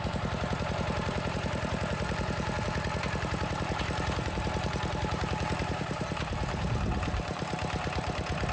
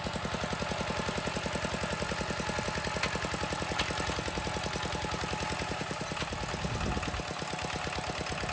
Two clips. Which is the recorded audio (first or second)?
second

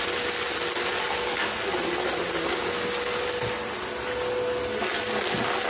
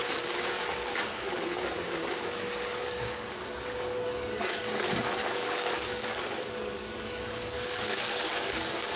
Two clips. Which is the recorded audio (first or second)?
first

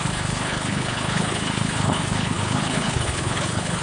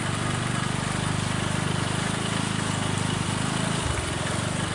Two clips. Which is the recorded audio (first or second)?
second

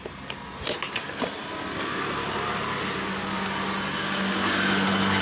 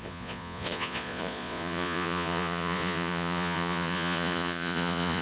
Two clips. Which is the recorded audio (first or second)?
first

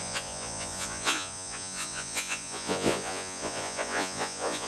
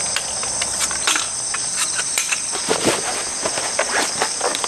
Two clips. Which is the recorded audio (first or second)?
second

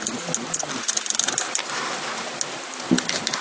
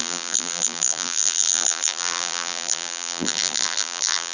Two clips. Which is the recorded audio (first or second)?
first